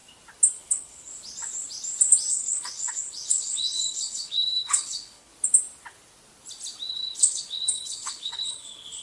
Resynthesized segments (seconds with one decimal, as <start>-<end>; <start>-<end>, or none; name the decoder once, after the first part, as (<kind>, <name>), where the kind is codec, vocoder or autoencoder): 0.6-1.1 (codec, HILCodec); 2.3-5.3; 6.9-9.0